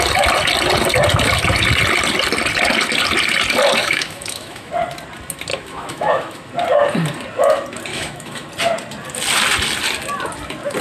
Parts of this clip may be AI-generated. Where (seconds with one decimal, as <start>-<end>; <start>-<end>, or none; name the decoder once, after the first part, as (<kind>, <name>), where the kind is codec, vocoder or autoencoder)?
3.8-4.7 (autoencoder, DAC-VAE); 5.5-6.5; 7.9-8.5

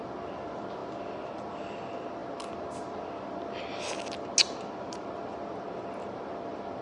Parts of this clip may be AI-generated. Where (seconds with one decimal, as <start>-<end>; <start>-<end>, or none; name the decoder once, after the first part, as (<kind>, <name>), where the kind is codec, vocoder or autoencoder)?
none

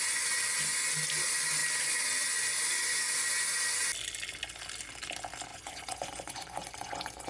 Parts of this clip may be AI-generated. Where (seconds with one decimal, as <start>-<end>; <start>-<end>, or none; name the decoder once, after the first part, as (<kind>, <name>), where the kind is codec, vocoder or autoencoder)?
5.5-7.3 (vocoder, Vocos)

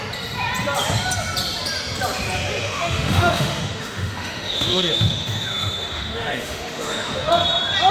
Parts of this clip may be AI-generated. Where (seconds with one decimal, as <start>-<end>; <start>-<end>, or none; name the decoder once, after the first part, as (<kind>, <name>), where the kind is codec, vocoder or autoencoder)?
2.6-7.3 (autoencoder, DAC-VAE)

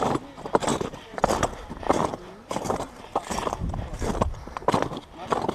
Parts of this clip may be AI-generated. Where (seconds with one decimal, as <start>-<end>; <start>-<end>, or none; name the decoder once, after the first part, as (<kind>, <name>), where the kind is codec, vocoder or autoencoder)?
0.7-1.2 (vocoder, BigVGAN v2); 2.1-4.1

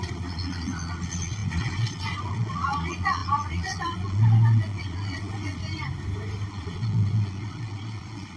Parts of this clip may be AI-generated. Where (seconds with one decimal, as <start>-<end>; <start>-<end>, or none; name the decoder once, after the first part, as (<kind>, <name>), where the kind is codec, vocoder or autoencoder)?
0.0-5.6 (vocoder, Vocos); 6.5-8.4